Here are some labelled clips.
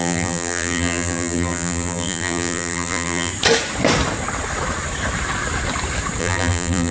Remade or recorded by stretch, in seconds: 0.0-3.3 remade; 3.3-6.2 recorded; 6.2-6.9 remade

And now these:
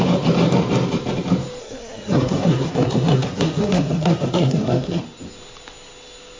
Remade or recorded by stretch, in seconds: 0.0-1.6 recorded; 1.6-5.0 remade; 5.0-6.4 recorded

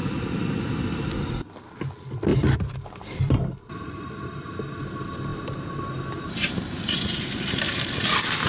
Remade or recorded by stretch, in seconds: 0.0-2.3 recorded; 2.3-4.5 remade; 4.5-5.3 recorded; 5.3-7.9 remade; 7.9-8.5 recorded

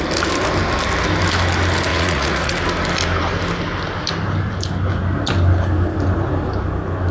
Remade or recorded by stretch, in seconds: 0.0-1.9 recorded; 1.9-2.5 remade; 2.5-7.1 recorded

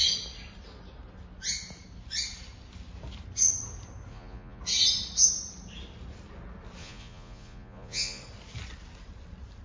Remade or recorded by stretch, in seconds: 0.0-4.1 recorded; 4.1-4.6 remade; 4.6-6.8 recorded; 6.8-8.2 remade; 8.2-9.6 recorded

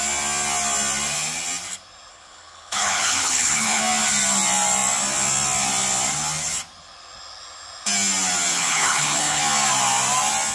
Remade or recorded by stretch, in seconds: 0.0-2.1 recorded; 2.1-3.8 remade; 3.8-8.5 recorded; 8.5-9.4 remade; 9.4-10.5 recorded